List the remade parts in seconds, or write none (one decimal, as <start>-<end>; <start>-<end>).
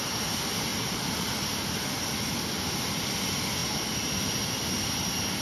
0.7-1.3